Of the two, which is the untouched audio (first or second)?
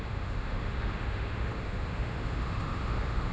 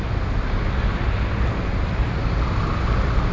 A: second